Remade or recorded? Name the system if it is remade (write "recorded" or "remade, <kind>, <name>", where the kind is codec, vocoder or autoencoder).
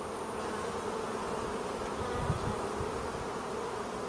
recorded